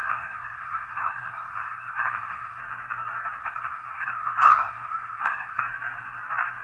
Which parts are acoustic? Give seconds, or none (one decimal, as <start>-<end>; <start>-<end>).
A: 2.6-3.4; 5.6-6.6